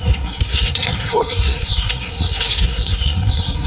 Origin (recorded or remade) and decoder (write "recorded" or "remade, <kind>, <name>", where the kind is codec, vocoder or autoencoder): remade, codec, SNAC